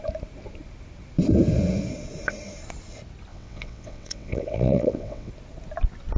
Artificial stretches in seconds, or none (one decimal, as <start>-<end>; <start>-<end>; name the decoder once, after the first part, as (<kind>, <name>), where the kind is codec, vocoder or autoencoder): 3.3-5.3 (vocoder, WaveNeXt)